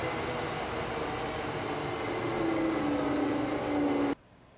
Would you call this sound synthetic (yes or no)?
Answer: no